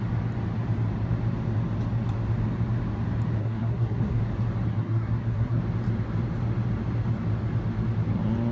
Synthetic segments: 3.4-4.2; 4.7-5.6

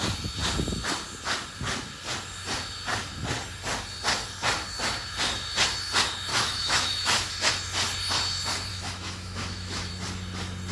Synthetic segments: 6.3-7.5; 8.7-9.9

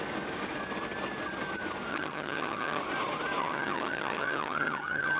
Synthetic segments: 1.9-2.8; 3.4-5.2

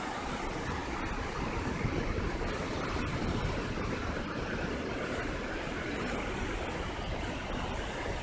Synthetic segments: none

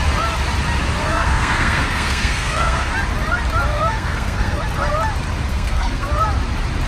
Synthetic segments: 1.0-2.9; 3.7-4.6; 5.5-6.1